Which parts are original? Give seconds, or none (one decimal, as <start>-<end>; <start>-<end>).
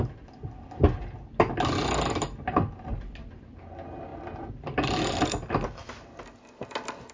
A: 0.0-7.1